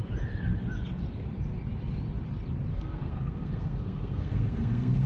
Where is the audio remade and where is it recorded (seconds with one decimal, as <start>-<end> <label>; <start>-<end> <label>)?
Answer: 0.0-2.7 recorded; 2.7-5.1 remade